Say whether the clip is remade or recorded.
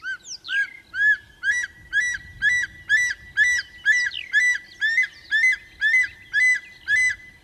recorded